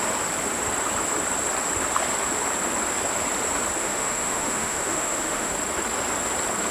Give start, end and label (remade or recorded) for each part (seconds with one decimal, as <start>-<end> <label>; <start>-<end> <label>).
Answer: 0.0-3.8 recorded; 3.8-5.5 remade; 5.5-6.7 recorded